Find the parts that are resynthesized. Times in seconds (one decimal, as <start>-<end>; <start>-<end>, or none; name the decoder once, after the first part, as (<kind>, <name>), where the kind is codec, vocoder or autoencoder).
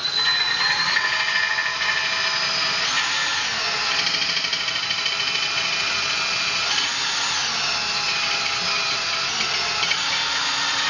4.5-5.1 (vocoder, BigVGAN v2)